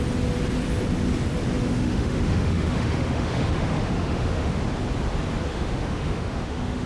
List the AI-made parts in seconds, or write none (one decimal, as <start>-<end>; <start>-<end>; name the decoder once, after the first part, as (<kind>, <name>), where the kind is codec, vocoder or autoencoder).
1.7-4.6 (autoencoder, DAC-VAE); 5.5-6.9